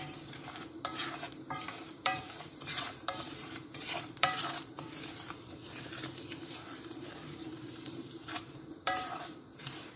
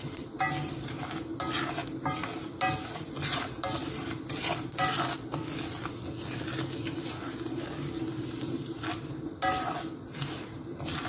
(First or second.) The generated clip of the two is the first